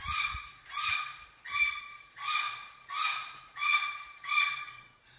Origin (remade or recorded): remade